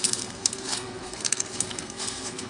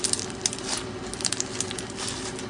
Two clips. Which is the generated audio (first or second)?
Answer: first